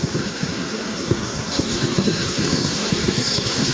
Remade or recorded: remade